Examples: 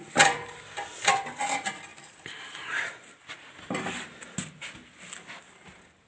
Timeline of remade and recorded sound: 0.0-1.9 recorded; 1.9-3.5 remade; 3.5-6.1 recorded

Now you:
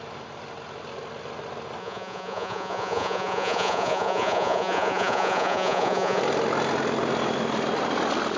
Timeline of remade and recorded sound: 0.0-1.8 recorded; 1.8-6.2 remade; 6.2-8.4 recorded

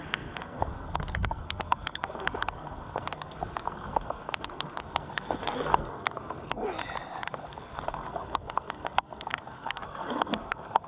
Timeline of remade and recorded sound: 0.0-6.8 remade; 6.8-7.3 recorded; 7.3-10.9 remade

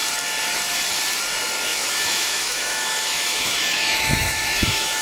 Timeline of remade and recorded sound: 0.0-1.7 recorded; 1.7-5.0 remade

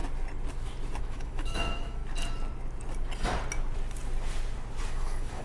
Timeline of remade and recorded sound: 0.0-1.0 recorded; 1.0-2.0 remade; 2.0-4.9 recorded; 4.9-5.4 remade

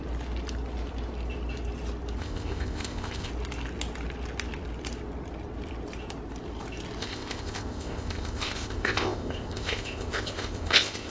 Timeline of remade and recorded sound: 0.0-2.2 recorded; 2.2-3.3 remade; 3.3-7.0 recorded; 7.0-11.1 remade

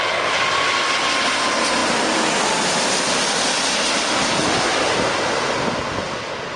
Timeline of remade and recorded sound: 0.0-6.6 recorded

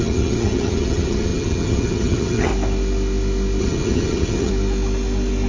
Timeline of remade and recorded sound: 0.0-2.5 remade; 2.5-3.6 recorded; 3.6-4.5 remade; 4.5-5.5 recorded